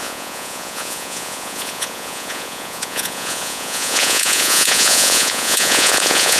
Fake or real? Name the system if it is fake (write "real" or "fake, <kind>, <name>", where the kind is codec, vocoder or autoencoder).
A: fake, vocoder, Vocos